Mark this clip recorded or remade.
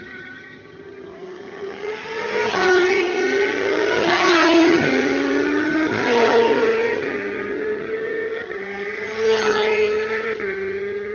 remade